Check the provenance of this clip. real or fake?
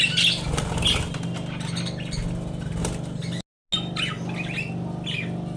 real